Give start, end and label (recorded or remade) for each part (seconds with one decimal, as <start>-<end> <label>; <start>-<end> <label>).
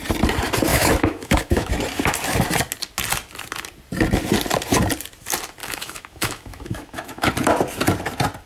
0.0-0.7 recorded; 0.7-1.7 remade; 1.7-5.6 recorded; 5.6-7.3 remade; 7.3-8.5 recorded